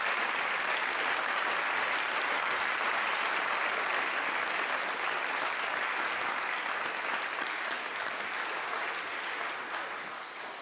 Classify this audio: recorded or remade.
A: recorded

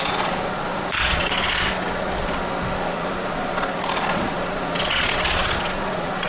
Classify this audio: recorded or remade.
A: remade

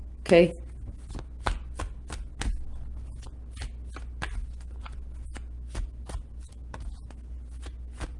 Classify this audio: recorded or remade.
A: recorded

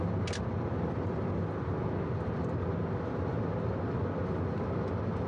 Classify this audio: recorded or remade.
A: recorded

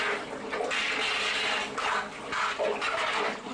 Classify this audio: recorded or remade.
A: recorded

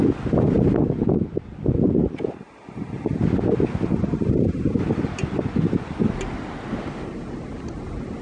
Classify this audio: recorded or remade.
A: recorded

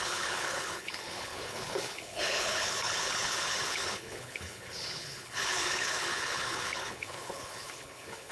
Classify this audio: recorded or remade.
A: remade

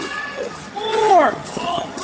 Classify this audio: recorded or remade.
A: remade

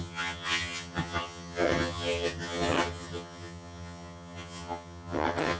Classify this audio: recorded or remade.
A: remade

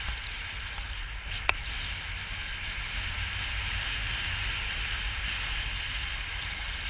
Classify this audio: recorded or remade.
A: recorded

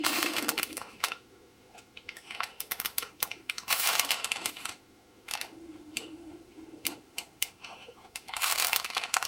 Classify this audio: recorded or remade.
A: remade